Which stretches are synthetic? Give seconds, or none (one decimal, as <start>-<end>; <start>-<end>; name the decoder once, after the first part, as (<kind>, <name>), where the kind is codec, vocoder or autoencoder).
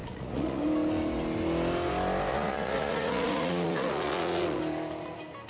0.0-0.6 (vocoder, Vocos); 2.3-4.6